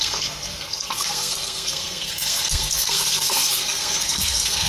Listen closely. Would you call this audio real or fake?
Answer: fake